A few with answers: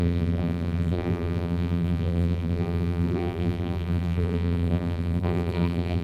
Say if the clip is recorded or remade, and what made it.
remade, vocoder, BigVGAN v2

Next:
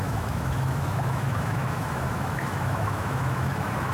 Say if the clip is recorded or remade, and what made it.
remade, autoencoder, DAC-VAE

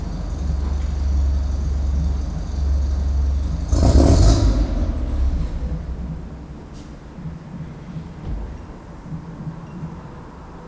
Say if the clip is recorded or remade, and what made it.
recorded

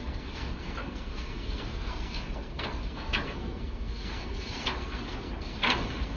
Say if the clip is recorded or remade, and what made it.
remade, codec, SNAC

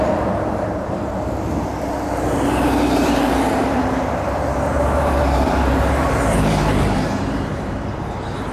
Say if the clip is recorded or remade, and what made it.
remade, vocoder, BigVGAN v2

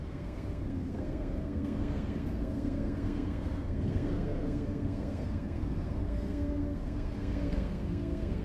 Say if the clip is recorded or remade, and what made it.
remade, codec, SNAC